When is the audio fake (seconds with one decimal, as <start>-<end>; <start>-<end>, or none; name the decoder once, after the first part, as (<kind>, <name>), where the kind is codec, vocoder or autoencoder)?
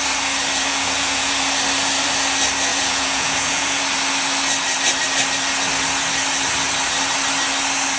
0.7-1.3 (vocoder, Vocos); 2.7-3.8